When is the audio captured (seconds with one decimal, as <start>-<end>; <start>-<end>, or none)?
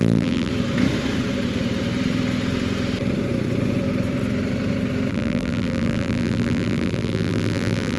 0.5-5.1